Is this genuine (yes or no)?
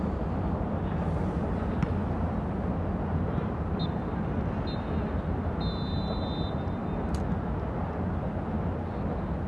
yes